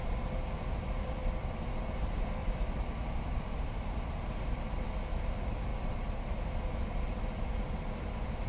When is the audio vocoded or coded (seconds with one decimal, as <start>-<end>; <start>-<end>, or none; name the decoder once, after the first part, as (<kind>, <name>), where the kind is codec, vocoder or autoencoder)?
1.2-1.8 (vocoder, BigVGAN v2); 2.4-4.1; 5.7-6.4